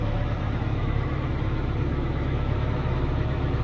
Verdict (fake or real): fake